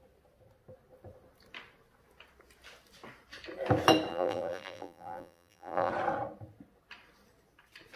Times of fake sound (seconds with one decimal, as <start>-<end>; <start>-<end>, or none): 4.1-5.9